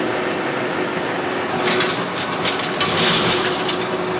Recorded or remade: recorded